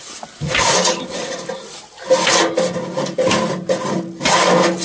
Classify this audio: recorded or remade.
recorded